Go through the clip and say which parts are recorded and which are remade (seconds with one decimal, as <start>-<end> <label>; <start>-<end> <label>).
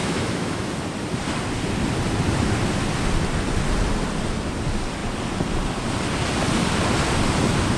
0.0-0.7 remade; 0.7-7.8 recorded